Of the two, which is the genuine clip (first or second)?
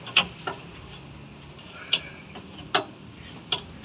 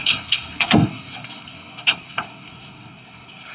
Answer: first